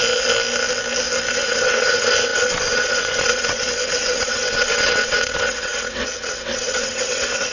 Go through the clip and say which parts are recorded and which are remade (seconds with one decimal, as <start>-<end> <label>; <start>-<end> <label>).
0.0-1.3 recorded; 1.3-7.5 remade